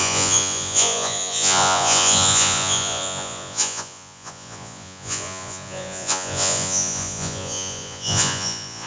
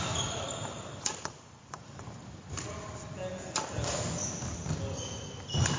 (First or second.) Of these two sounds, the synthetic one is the first